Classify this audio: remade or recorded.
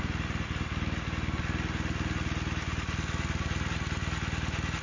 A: recorded